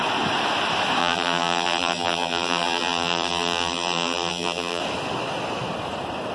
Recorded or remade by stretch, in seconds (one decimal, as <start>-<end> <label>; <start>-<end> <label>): 0.0-1.0 recorded; 1.0-4.8 remade; 4.8-6.3 recorded